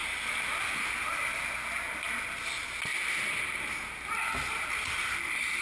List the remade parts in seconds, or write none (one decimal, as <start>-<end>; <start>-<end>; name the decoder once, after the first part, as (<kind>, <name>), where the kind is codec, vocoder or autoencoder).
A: none